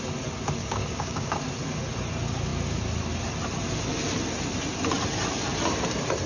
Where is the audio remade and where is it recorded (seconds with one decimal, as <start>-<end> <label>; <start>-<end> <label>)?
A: 0.0-0.6 recorded; 0.6-1.4 remade; 1.4-6.3 recorded